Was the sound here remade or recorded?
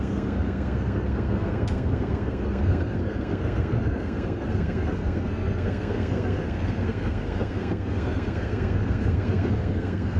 remade